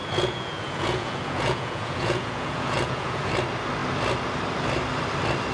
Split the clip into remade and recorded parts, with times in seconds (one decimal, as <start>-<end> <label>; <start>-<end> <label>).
0.0-3.3 remade; 3.3-5.5 recorded